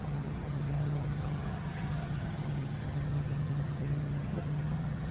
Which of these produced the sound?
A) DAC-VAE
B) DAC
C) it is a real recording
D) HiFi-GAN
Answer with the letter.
D